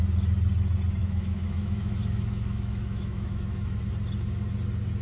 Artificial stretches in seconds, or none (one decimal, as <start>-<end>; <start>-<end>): 1.0-3.8